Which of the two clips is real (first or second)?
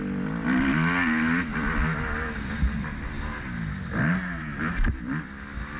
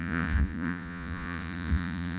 first